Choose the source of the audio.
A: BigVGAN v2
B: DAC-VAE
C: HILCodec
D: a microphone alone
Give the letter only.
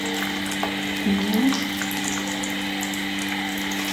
D